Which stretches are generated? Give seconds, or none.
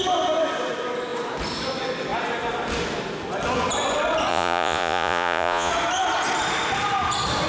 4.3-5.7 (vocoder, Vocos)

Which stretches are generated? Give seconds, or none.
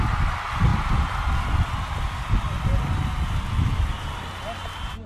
none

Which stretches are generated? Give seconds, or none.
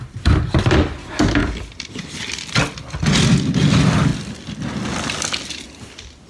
none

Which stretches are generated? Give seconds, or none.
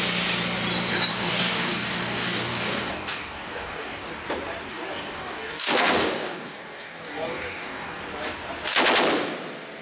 1.1-4.1 (codec, DAC); 4.7-8.0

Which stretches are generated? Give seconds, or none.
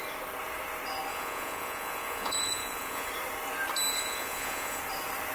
1.1-3.1 (vocoder, Vocos); 3.9-4.8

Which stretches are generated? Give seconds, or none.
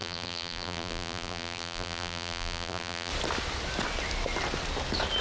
0.0-3.1 (vocoder, BigVGAN v2)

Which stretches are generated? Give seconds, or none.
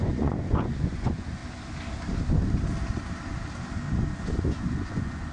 0.0-1.4 (vocoder, Vocos); 4.6-5.3